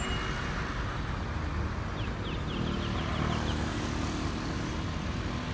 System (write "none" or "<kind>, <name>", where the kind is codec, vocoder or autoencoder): none